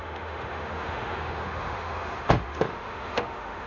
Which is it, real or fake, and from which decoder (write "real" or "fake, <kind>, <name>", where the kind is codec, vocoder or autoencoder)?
fake, autoencoder, DAC-VAE